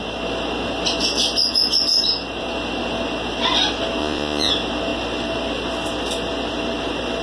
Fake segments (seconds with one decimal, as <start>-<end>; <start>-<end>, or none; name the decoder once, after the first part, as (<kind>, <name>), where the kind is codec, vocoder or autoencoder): 4.0-4.5 (vocoder, Vocos)